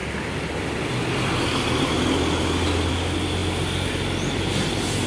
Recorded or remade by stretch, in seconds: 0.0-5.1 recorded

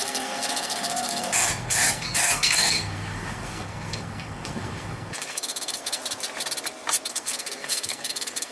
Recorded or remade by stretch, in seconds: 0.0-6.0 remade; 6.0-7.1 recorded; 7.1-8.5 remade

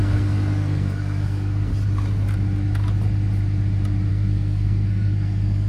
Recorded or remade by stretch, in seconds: 0.0-1.7 remade; 1.7-4.1 recorded; 4.1-5.7 remade

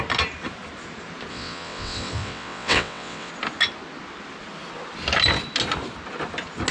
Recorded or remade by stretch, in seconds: 0.0-1.3 recorded; 1.3-3.3 remade; 3.3-6.7 recorded